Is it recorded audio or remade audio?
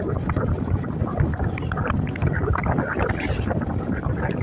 recorded